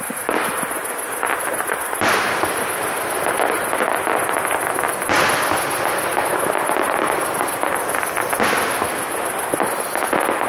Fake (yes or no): no